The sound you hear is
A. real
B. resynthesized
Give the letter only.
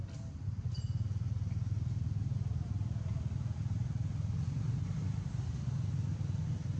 A